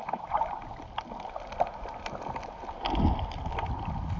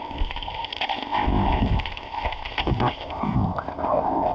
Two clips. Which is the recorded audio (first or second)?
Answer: first